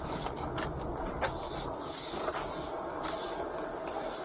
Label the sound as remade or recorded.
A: recorded